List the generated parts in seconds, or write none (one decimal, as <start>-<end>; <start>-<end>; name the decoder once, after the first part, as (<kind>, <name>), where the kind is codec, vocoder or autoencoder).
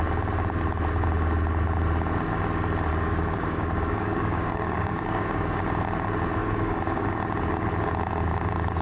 2.9-5.6 (codec, DAC); 6.4-7.1